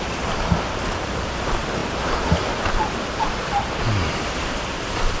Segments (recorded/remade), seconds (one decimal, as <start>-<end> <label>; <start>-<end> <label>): 0.0-5.2 remade